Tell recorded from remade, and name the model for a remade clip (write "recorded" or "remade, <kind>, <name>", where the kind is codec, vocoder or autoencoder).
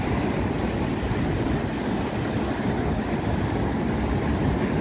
recorded